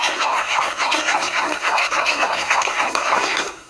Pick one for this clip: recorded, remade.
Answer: remade